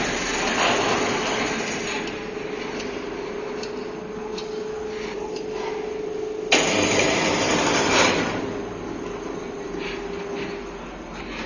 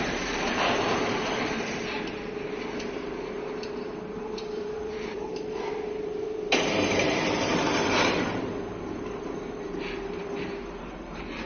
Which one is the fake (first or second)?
second